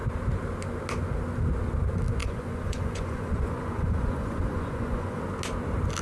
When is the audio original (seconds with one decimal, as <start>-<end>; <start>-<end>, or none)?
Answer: 0.0-2.2; 5.2-6.0